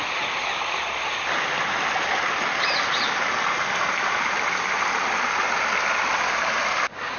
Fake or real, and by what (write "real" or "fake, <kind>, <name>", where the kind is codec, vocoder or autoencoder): real